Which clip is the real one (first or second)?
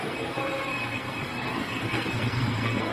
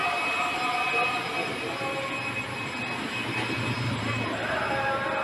second